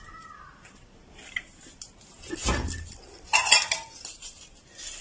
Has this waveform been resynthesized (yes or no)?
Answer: no